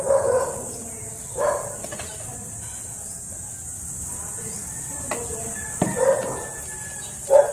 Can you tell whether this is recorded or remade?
recorded